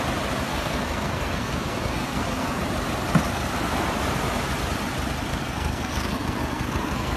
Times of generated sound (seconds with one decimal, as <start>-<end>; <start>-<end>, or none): 0.5-2.6; 5.3-7.2